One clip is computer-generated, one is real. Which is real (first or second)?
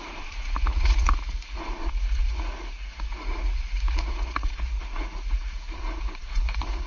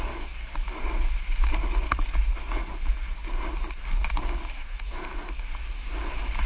second